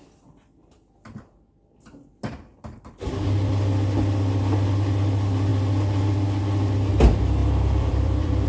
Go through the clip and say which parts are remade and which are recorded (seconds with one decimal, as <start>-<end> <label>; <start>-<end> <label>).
0.0-2.5 recorded; 2.5-3.5 remade; 3.5-7.4 recorded; 7.4-8.5 remade